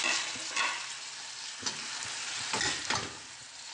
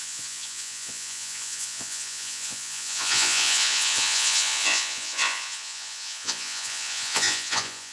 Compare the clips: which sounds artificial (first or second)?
second